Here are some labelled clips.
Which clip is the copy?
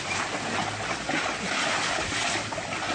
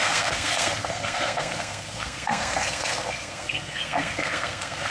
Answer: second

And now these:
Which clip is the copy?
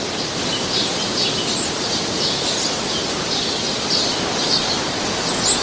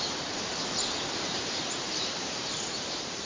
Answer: second